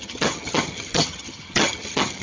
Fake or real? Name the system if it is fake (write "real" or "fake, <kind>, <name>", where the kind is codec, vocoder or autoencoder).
fake, vocoder, HiFi-GAN